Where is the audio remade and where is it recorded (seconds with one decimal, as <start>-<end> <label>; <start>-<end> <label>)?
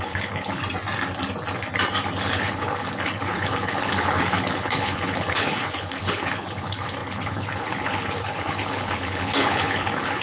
0.0-0.6 remade; 0.6-2.3 recorded; 2.3-10.2 remade